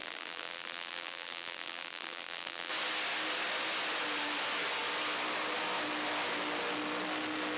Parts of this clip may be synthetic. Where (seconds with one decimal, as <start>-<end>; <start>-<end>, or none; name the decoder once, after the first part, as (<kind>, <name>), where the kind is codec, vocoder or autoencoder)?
0.0-2.7 (vocoder, BigVGAN v2)